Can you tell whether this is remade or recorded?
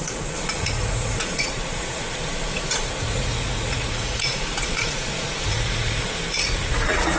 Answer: remade